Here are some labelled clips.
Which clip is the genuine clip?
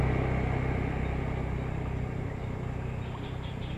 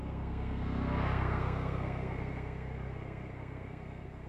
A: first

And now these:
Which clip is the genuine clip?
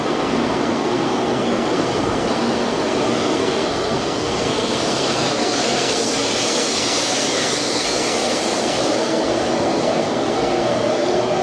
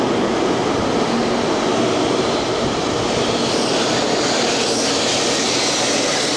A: second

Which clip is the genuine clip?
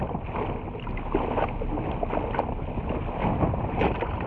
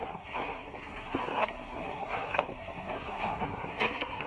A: first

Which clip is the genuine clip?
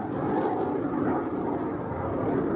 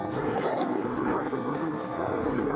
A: first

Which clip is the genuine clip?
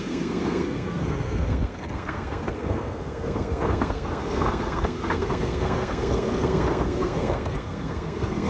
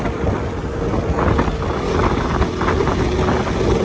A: second